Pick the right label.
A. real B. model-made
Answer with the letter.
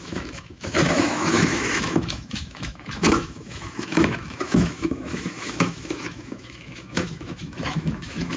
B